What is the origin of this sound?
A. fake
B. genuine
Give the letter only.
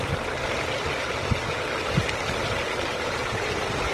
B